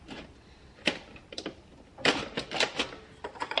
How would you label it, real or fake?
fake